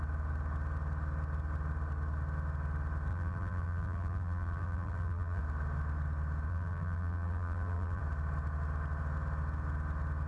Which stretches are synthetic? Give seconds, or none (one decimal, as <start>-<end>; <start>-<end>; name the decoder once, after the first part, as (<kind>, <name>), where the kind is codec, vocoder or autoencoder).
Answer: 3.1-5.4 (vocoder, BigVGAN v2); 6.5-8.0